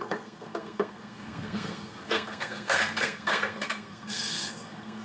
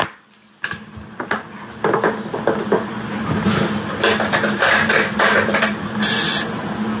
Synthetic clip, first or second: first